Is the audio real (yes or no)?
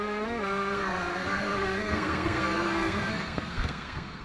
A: no